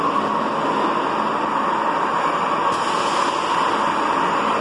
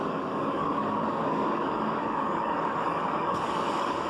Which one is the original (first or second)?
first